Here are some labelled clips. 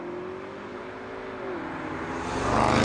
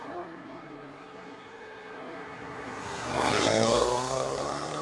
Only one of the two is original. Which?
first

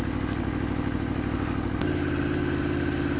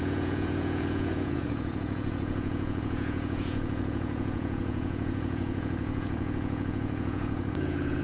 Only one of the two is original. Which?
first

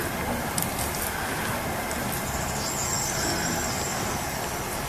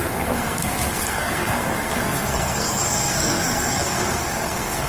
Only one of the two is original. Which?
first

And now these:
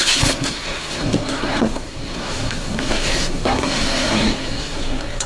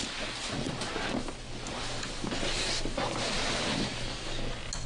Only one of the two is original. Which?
second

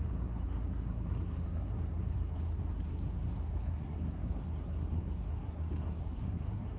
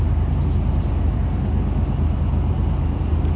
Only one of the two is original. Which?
second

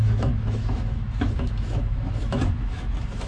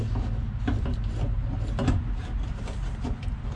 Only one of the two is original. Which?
second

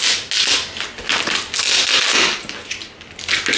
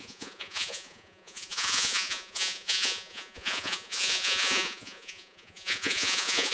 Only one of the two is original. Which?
first